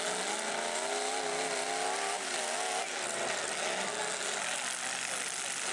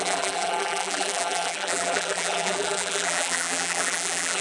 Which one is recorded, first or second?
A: first